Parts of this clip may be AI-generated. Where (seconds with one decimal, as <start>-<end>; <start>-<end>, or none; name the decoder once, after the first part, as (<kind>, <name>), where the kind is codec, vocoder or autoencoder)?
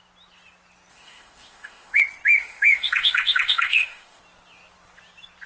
0.9-2.0 (autoencoder, DAC-VAE); 2.4-4.2